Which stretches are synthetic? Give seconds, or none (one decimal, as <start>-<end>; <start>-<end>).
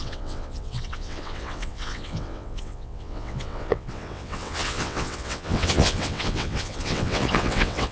0.0-7.9